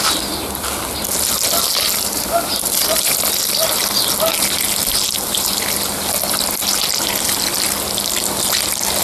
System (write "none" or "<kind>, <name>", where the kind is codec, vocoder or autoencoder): none